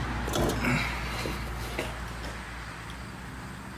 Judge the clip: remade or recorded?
recorded